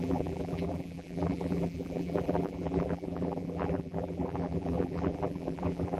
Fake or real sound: fake